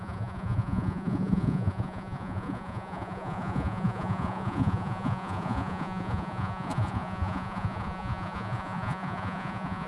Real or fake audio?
fake